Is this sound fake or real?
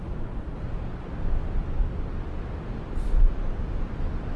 real